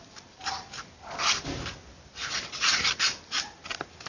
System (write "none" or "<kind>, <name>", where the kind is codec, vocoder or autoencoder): none